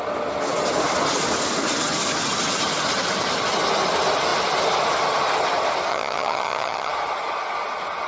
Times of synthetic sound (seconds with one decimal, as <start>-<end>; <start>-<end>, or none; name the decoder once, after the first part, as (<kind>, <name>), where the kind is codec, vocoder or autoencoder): 5.9-6.9 (vocoder, HiFi-GAN)